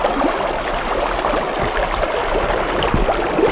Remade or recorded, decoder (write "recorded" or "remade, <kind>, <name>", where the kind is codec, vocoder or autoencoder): recorded